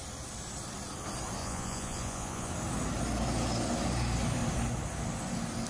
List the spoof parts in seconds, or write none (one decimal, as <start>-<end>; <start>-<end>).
1.4-2.5